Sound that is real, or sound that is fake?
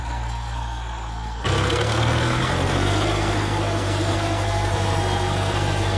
fake